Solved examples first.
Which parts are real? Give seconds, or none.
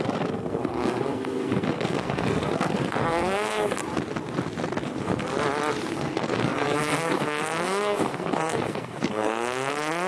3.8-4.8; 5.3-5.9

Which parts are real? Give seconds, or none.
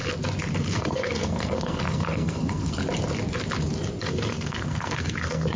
0.0-0.5; 2.8-4.0